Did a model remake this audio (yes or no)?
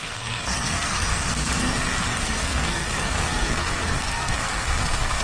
yes